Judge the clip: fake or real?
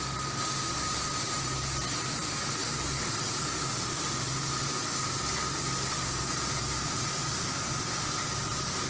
fake